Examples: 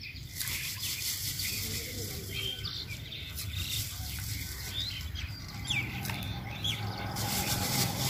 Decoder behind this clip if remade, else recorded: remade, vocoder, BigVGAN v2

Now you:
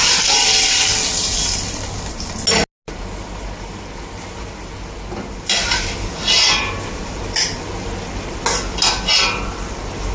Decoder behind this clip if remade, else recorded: recorded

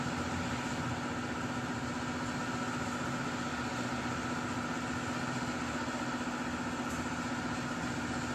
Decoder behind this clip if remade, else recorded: recorded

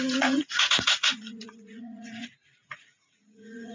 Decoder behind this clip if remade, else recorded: remade, vocoder, Vocos